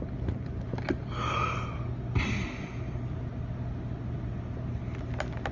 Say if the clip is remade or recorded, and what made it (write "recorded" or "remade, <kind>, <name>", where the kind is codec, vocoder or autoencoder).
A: recorded